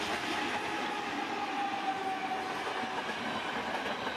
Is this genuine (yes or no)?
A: yes